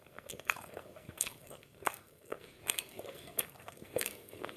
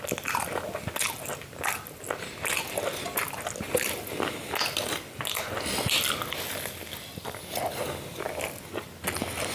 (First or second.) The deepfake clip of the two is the first